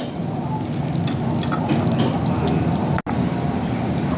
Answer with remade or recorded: recorded